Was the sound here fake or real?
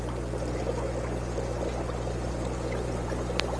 real